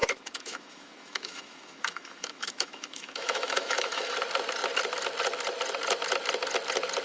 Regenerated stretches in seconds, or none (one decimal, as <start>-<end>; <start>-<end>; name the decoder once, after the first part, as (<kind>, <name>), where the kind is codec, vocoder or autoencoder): 0.0-4.1 (autoencoder, DAC-VAE)